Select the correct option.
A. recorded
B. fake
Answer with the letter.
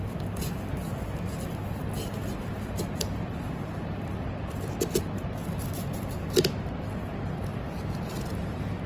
A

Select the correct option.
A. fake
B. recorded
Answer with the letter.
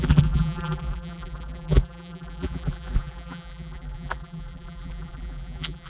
A